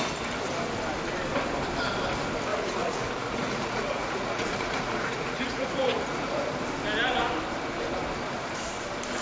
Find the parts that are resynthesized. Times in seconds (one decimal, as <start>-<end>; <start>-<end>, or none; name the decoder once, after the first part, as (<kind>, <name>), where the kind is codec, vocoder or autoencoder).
2.5-6.4 (vocoder, Vocos)